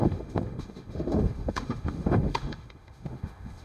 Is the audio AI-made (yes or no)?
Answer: yes